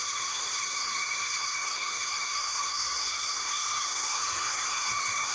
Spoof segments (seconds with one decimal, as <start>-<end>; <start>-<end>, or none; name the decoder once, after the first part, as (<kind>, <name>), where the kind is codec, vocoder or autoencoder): 0.0-5.3 (codec, SNAC)